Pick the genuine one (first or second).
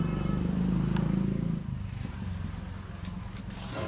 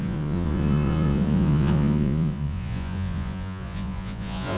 first